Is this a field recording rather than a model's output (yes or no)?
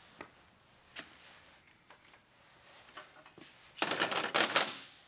yes